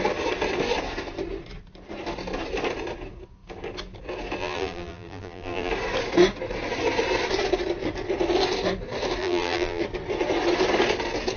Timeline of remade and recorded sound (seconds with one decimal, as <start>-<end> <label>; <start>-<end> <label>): 0.0-4.4 recorded; 4.4-5.7 remade; 5.7-9.2 recorded; 9.2-9.8 remade; 9.8-11.4 recorded